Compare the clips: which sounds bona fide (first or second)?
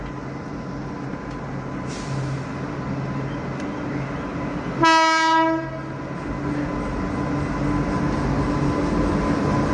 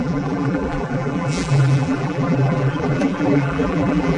first